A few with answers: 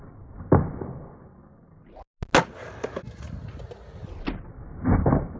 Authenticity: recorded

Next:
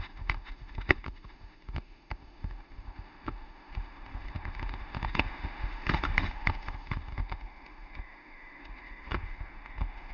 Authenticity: remade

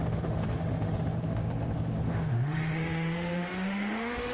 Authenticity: remade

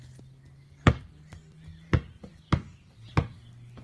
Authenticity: recorded